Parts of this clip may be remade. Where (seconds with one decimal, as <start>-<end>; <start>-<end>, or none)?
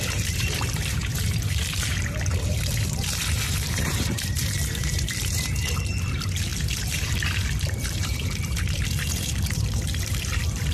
0.0-10.7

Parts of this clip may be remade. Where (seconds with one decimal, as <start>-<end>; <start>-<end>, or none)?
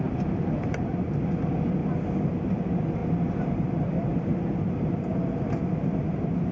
0.0-1.8; 2.3-3.0; 3.8-5.2; 6.1-6.5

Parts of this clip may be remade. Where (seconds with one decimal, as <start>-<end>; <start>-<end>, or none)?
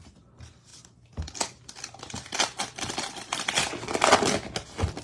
none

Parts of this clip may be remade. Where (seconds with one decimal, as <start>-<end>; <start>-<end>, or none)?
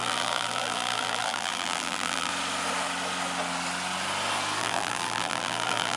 0.0-2.3; 4.6-6.0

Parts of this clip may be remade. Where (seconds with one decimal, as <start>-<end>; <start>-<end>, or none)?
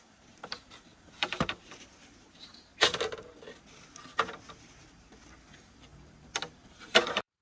0.0-2.7; 4.5-5.9; 6.7-7.4